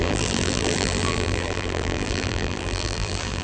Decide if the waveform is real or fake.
fake